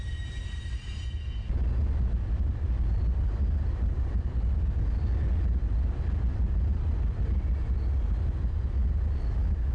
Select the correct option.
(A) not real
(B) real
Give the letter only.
B